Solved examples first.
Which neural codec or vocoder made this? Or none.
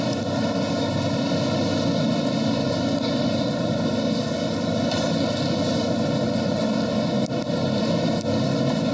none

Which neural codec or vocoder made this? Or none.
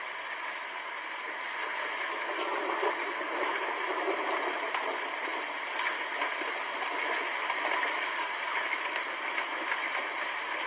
none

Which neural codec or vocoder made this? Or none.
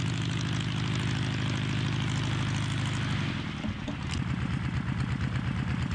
none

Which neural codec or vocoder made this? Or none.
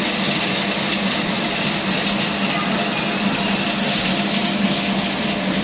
none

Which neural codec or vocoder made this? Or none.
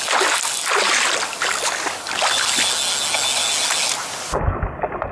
none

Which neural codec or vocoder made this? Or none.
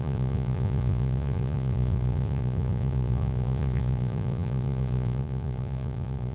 vocoder, Vocos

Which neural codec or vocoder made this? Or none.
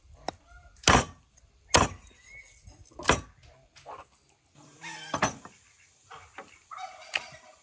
none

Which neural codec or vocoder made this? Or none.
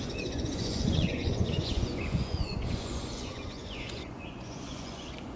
vocoder, Vocos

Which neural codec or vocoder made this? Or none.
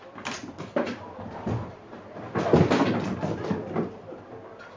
none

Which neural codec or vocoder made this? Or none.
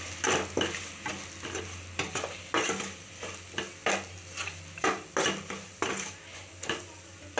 none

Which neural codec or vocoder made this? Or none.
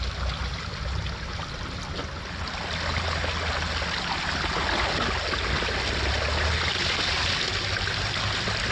none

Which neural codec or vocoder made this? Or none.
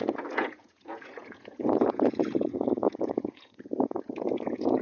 vocoder, Vocos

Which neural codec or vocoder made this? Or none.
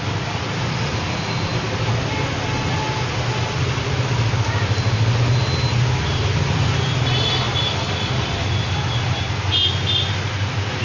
none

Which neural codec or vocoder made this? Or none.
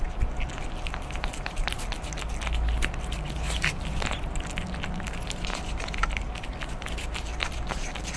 none